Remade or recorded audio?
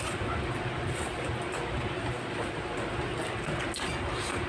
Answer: recorded